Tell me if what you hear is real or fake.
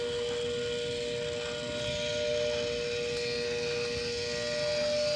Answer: real